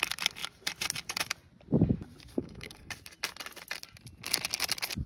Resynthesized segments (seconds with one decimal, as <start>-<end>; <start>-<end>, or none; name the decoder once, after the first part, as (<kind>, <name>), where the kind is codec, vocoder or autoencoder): 2.3-2.9 (codec, SNAC)